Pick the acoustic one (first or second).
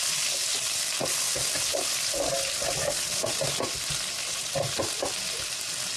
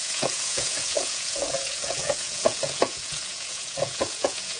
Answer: first